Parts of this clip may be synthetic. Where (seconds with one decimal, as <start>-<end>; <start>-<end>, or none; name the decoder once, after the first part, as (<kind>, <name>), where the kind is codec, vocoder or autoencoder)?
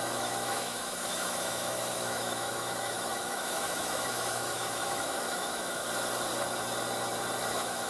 0.0-5.8 (autoencoder, DAC-VAE); 7.5-7.9